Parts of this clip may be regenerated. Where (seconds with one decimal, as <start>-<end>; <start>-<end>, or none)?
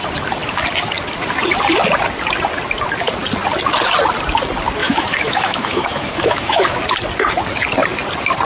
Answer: 4.8-6.8